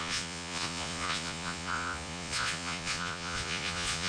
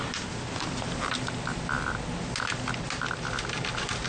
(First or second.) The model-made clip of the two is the first